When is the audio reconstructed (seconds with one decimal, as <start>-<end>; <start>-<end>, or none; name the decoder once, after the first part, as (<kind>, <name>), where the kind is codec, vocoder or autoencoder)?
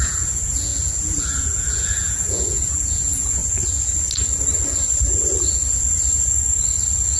0.0-3.4 (vocoder, Vocos)